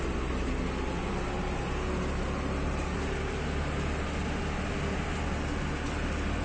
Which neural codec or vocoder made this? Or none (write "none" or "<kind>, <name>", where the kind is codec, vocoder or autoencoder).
none